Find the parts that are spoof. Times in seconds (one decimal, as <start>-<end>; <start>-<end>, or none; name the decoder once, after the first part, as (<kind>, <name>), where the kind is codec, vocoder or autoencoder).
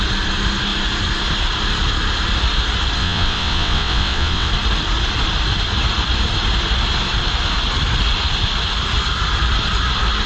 3.0-4.5 (vocoder, WaveNeXt)